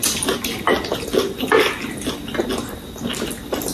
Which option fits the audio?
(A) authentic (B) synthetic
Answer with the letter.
A